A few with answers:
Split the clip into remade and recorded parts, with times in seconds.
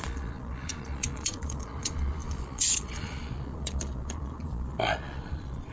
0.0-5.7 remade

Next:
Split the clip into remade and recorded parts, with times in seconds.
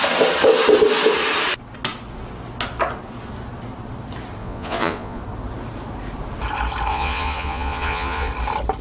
0.0-4.4 recorded; 4.4-5.2 remade; 5.2-6.9 recorded; 6.9-8.3 remade; 8.3-8.8 recorded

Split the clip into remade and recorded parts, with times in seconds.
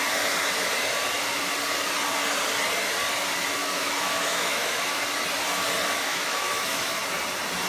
0.0-3.6 recorded; 3.6-5.0 remade; 5.0-6.1 recorded; 6.1-7.0 remade; 7.0-7.7 recorded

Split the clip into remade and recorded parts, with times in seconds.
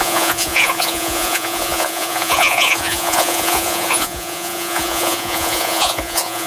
0.0-6.5 remade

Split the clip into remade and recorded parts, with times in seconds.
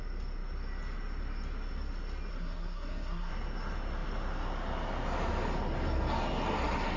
0.0-2.3 recorded; 2.3-3.3 remade; 3.3-7.0 recorded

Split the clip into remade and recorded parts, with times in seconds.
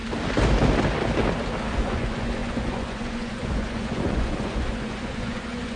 0.0-1.7 recorded; 1.7-5.8 remade